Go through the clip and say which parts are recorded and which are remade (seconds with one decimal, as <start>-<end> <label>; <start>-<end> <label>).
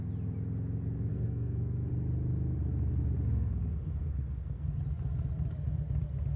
0.0-1.1 recorded; 1.1-1.9 remade; 1.9-3.3 recorded; 3.3-4.8 remade; 4.8-6.4 recorded